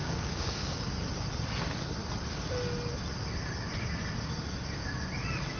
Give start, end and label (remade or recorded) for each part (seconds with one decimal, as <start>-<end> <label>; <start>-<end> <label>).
0.0-0.9 remade; 0.9-5.6 recorded